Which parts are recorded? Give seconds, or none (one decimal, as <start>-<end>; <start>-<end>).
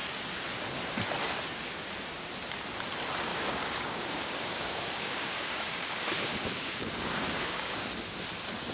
0.0-3.3; 7.9-8.7